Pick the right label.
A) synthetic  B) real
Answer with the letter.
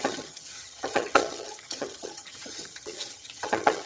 A